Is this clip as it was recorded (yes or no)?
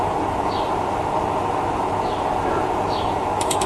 yes